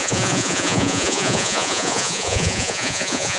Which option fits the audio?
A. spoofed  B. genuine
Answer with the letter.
A